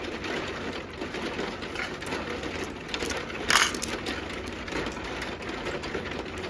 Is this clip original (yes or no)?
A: yes